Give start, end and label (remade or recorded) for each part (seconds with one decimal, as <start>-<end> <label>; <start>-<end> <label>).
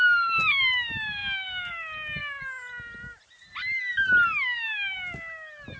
0.0-5.8 recorded